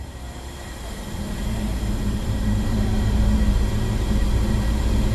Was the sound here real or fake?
fake